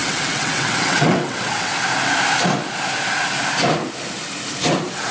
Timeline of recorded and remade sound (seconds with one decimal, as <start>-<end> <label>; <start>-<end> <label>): 0.0-1.7 remade; 1.7-5.1 recorded